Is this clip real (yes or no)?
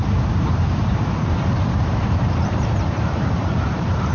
no